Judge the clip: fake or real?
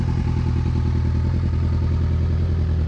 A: real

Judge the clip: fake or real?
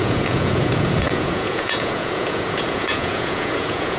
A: fake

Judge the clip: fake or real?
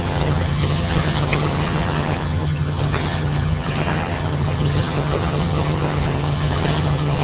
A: fake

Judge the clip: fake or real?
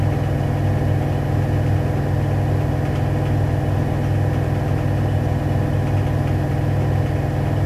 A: real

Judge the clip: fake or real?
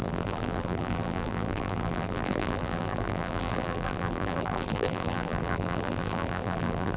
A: fake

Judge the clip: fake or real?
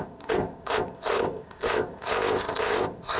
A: fake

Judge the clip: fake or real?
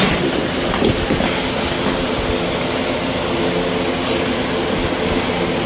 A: real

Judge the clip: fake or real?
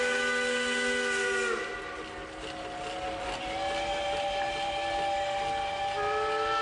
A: real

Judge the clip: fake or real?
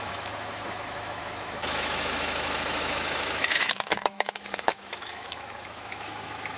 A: fake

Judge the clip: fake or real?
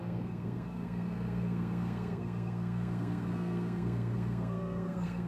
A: fake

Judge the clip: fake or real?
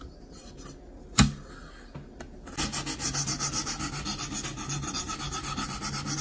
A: real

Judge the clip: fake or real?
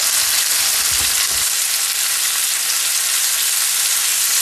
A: real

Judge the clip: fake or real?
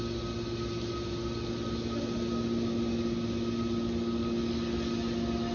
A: real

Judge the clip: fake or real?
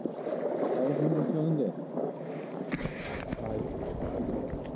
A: real